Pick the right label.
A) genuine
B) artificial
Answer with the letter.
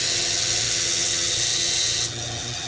B